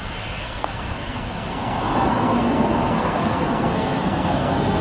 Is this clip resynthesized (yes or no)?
yes